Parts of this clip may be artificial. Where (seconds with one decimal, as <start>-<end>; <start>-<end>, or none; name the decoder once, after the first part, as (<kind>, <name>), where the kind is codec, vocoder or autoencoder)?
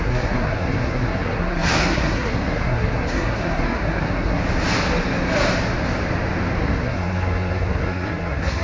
0.0-4.4 (codec, SNAC); 6.6-8.6